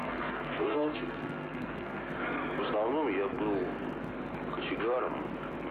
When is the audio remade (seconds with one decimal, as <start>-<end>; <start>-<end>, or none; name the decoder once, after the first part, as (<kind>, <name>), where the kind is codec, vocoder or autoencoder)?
0.0-2.0 (codec, SNAC)